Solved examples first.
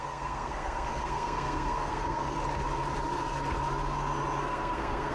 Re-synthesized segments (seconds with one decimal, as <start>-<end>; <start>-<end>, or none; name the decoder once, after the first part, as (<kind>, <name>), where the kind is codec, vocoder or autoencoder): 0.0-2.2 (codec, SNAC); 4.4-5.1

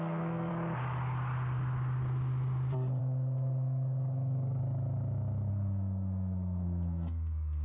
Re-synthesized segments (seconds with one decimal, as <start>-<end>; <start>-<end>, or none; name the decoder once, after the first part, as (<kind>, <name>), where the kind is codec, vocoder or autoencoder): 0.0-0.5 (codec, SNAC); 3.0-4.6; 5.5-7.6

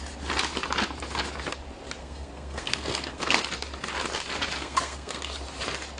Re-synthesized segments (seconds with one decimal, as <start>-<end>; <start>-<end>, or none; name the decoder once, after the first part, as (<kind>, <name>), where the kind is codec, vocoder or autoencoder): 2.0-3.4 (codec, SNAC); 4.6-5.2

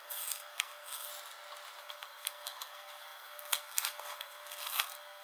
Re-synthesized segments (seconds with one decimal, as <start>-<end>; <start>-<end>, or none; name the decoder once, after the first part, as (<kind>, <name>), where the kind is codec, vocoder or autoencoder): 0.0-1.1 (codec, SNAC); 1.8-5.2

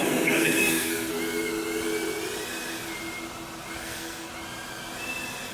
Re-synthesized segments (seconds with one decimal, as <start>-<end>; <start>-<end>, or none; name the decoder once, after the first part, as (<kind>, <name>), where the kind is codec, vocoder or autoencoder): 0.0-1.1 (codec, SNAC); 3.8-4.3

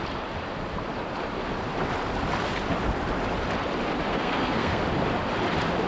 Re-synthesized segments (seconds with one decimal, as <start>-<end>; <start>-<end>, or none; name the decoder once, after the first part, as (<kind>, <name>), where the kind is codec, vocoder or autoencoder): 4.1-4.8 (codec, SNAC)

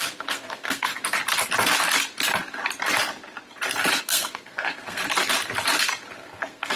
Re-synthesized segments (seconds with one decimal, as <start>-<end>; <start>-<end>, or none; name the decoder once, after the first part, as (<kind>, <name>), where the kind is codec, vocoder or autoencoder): 0.0-0.9 (codec, SNAC); 4.0-5.0; 6.2-6.8

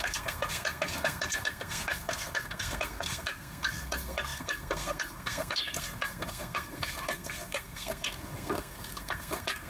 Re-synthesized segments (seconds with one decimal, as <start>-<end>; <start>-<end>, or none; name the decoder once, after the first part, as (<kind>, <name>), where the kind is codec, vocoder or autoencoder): 0.0-9.7 (codec, SNAC)